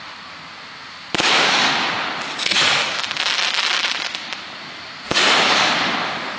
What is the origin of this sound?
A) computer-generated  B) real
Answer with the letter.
B